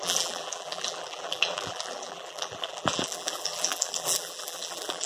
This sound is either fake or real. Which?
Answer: fake